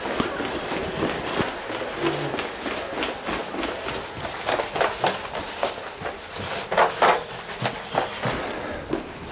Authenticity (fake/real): real